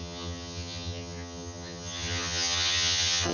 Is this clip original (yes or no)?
no